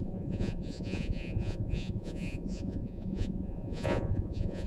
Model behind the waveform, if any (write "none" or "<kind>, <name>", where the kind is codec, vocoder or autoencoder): vocoder, Vocos